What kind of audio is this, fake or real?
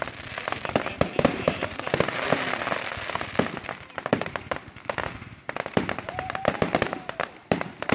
fake